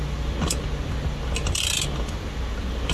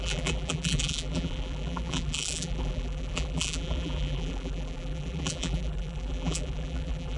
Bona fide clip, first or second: first